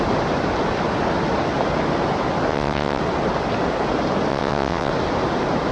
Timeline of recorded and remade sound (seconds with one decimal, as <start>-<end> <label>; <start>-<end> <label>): 0.0-2.5 recorded; 2.5-3.0 remade; 3.0-4.3 recorded; 4.3-4.9 remade; 4.9-5.7 recorded